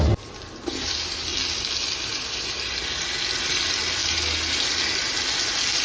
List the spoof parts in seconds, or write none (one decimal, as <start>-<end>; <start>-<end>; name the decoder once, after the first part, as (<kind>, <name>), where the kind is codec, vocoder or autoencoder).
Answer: none